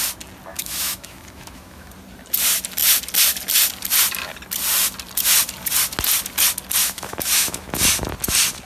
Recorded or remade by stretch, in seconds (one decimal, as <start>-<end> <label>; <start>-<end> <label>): 0.0-0.5 recorded; 0.5-1.9 remade; 1.9-6.8 recorded; 6.8-7.8 remade; 7.8-8.7 recorded

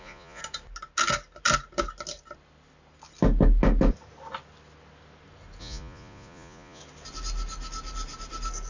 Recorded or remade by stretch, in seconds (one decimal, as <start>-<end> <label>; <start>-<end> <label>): 0.0-0.4 remade; 0.4-5.6 recorded; 5.6-6.8 remade; 6.8-8.7 recorded

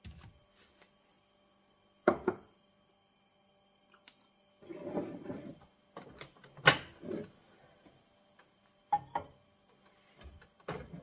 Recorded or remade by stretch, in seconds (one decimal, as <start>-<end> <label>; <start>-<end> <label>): 0.0-11.0 recorded

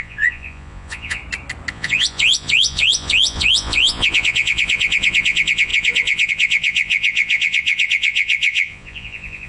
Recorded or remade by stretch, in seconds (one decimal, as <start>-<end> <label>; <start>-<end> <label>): 0.0-1.2 remade; 1.2-1.7 recorded; 1.7-9.5 remade